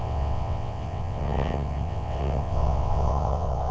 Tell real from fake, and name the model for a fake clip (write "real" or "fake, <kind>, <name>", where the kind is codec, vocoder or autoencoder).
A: fake, vocoder, WaveNeXt